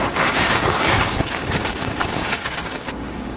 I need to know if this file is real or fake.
fake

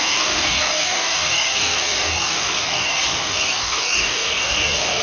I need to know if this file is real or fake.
fake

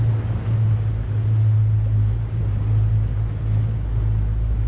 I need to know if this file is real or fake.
real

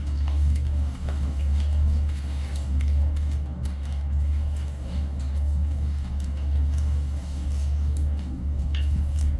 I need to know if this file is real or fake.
fake